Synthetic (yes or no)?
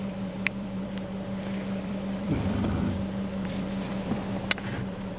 yes